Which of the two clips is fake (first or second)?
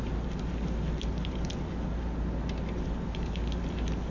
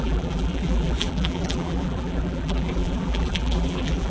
second